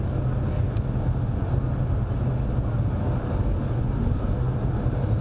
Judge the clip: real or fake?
real